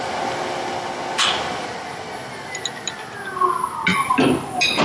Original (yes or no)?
yes